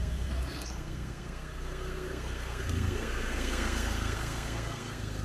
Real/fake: fake